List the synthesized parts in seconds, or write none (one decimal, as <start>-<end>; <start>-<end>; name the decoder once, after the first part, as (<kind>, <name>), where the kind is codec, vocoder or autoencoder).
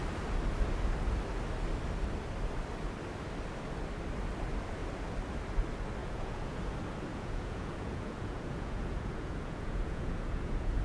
6.0-6.6 (vocoder, Vocos); 7.1-10.8